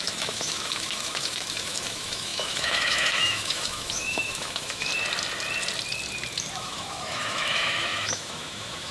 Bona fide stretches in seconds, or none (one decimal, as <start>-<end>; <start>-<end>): 4.9-6.5